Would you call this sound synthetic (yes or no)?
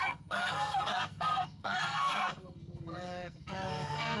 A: yes